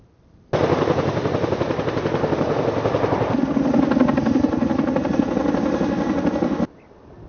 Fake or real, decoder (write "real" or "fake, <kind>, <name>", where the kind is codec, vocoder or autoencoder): real